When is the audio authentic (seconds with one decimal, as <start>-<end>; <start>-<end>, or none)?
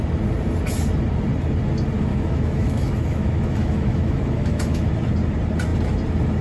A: 0.0-2.1; 4.9-6.4